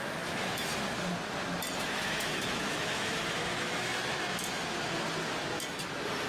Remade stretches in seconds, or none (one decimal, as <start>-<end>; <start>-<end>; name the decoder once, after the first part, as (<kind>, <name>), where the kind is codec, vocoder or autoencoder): 0.0-0.7 (autoencoder, DAC-VAE); 1.8-3.9